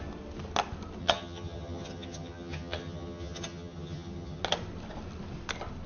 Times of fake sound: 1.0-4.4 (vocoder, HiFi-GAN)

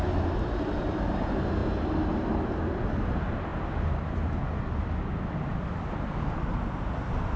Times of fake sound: none

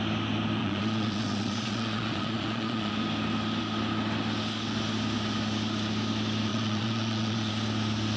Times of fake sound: 0.6-2.9 (vocoder, Vocos); 6.5-7.5

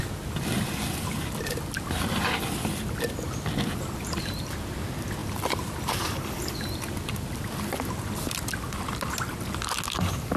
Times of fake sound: none